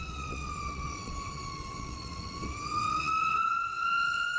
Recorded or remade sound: remade